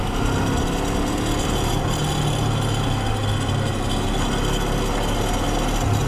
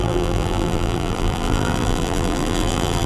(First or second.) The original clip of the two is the first